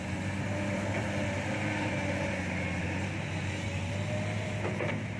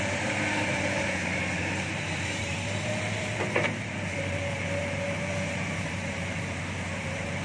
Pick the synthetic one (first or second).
second